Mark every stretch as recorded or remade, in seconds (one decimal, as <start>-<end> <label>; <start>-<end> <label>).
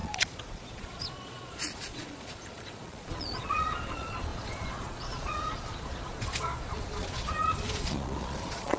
0.0-8.8 remade